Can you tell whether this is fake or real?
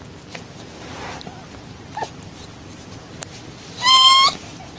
real